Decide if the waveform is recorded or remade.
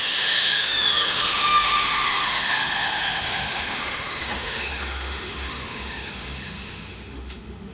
remade